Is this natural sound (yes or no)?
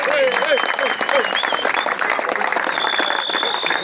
yes